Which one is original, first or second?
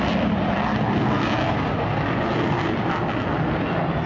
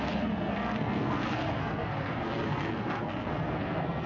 first